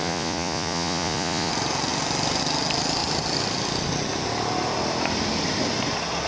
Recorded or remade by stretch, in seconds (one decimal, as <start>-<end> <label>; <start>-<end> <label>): 0.0-1.5 remade; 1.5-6.3 recorded